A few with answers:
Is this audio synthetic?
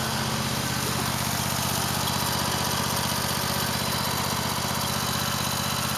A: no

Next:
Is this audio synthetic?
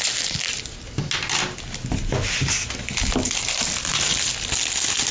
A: no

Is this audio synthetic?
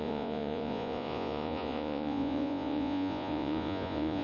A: yes